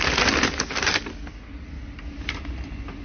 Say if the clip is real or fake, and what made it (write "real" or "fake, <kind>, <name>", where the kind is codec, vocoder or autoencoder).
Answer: real